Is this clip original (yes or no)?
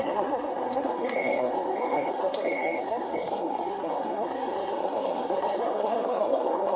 no